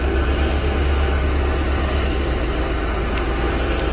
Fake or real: real